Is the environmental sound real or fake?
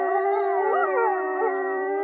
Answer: fake